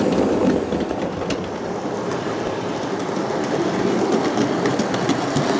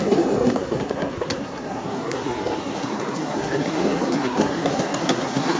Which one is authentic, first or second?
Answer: first